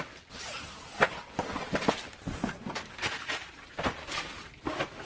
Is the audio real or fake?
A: real